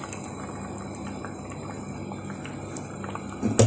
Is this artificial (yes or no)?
no